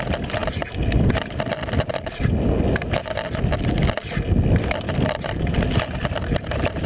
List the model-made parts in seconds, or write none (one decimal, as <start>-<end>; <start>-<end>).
none